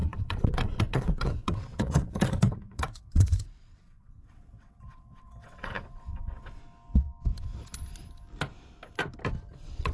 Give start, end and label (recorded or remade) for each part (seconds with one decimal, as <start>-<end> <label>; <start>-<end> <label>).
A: 0.0-6.6 remade; 6.6-9.5 recorded; 9.5-9.9 remade